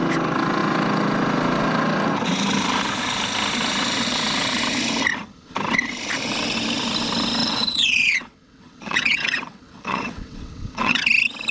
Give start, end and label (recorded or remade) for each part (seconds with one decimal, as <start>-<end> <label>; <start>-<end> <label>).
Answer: 0.0-7.4 recorded; 7.4-11.0 remade; 11.0-11.5 recorded